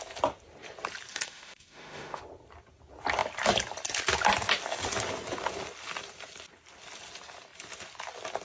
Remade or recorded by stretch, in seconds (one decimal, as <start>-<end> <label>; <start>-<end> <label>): 0.0-1.1 recorded; 1.1-2.2 remade; 2.2-8.4 recorded